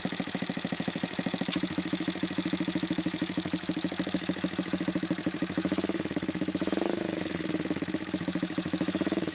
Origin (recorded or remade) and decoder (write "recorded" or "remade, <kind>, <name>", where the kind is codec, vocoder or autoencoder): remade, autoencoder, DAC-VAE